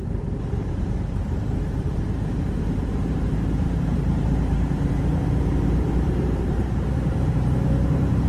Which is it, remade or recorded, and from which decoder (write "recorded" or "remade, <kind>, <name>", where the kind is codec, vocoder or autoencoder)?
remade, vocoder, BigVGAN v2